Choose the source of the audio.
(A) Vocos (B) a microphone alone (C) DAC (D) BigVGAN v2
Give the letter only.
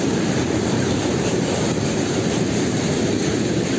D